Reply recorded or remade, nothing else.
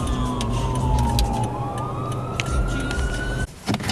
recorded